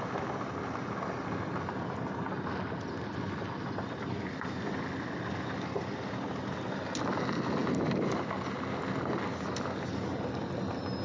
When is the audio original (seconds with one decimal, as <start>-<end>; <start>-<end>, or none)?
0.0-11.0